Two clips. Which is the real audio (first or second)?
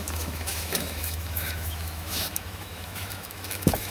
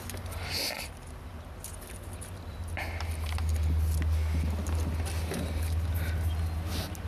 second